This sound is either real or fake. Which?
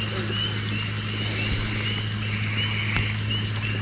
real